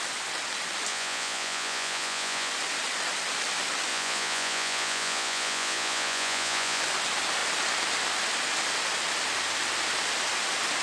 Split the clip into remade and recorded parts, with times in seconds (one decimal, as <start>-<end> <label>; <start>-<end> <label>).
0.0-0.9 recorded; 0.9-2.5 remade; 2.5-3.9 recorded; 3.9-6.8 remade; 6.8-10.8 recorded